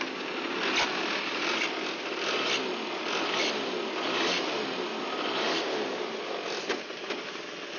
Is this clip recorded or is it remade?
recorded